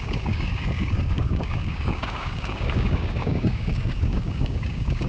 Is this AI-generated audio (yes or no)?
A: yes